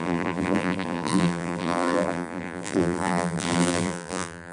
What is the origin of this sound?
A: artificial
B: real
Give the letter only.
A